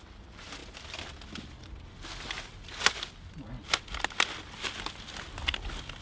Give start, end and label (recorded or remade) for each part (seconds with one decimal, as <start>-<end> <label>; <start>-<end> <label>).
0.0-6.0 recorded